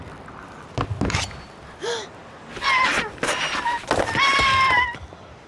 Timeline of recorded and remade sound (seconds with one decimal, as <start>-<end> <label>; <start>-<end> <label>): 0.0-5.5 recorded